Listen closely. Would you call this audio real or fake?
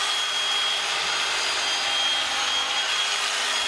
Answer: real